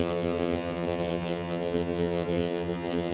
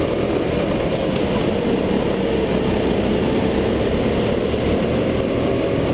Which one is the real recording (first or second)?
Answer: second